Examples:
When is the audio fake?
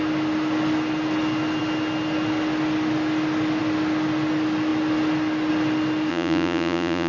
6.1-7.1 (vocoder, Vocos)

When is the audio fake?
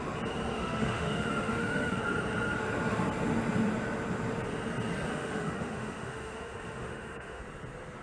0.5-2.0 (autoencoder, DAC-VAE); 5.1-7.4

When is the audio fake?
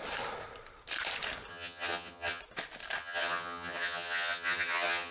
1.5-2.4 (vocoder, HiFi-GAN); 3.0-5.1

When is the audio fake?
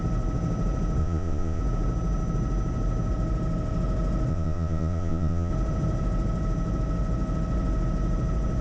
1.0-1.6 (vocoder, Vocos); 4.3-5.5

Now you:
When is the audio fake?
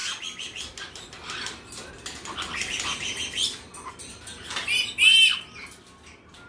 none